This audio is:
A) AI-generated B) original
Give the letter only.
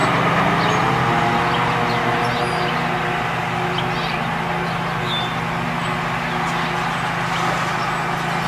B